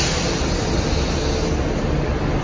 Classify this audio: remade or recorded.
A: recorded